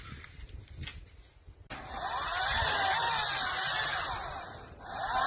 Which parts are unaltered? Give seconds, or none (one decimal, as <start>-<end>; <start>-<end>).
0.0-4.3